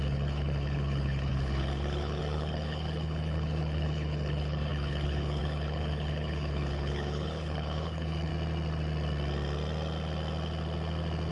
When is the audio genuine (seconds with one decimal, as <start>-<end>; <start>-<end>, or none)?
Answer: 8.3-11.3